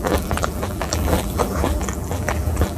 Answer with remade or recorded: remade